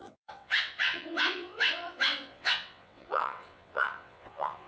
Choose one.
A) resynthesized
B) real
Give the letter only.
A